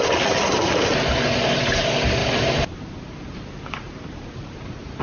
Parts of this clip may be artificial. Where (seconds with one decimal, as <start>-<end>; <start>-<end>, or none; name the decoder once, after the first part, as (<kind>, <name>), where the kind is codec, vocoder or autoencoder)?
2.2-5.0 (vocoder, BigVGAN v2)